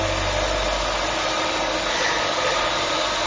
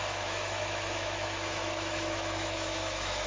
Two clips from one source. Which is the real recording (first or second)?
first